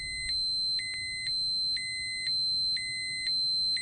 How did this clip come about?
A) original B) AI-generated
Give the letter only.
A